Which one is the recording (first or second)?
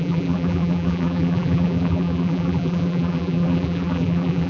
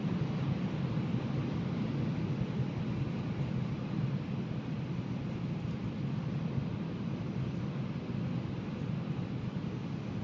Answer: second